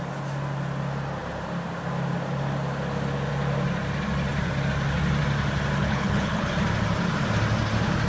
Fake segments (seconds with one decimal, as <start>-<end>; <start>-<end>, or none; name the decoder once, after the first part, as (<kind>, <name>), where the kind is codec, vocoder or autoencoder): 5.8-6.5 (codec, HILCodec)